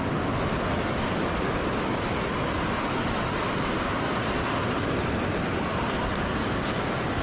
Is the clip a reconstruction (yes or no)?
no